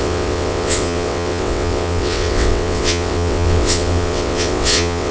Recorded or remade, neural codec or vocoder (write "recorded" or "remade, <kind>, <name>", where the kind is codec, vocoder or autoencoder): remade, vocoder, WaveNeXt